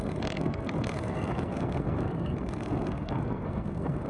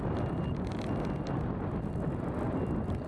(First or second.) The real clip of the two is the second